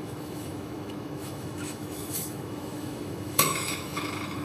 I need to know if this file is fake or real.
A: fake